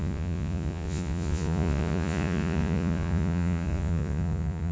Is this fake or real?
fake